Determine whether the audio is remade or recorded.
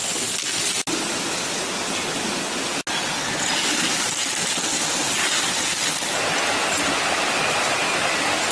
recorded